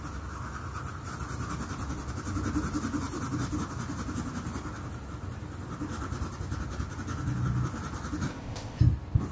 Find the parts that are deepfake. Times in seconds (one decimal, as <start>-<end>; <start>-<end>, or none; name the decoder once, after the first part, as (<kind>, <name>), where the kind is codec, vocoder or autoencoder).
8.3-8.8 (codec, ZipCodec)